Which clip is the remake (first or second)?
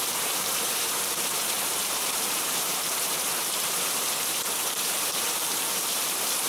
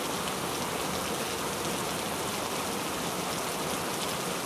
first